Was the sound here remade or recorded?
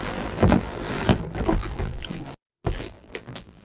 remade